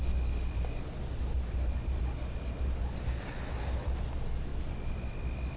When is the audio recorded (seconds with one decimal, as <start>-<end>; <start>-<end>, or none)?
0.0-5.6